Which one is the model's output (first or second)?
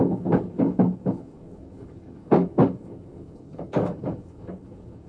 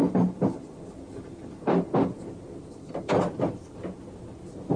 first